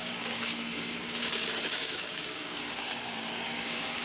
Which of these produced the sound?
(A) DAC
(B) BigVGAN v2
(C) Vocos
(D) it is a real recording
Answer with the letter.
A